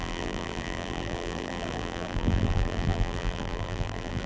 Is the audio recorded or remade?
remade